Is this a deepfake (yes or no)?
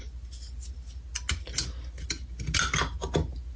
no